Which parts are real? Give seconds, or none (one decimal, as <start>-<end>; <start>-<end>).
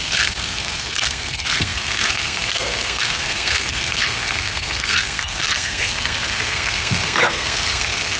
none